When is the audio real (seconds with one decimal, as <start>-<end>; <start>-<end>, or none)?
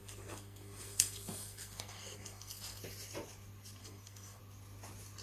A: 2.8-3.8; 4.4-5.2